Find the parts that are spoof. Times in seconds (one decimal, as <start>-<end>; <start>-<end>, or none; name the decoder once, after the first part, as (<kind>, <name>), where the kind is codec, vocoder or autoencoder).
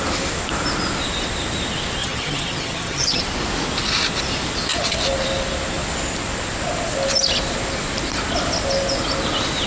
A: 2.0-3.2 (vocoder, HiFi-GAN)